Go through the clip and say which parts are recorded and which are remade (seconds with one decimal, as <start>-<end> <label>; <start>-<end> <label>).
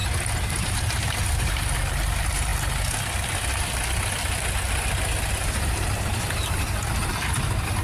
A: 0.0-0.6 recorded; 0.6-2.5 remade; 2.5-5.3 recorded; 5.3-7.8 remade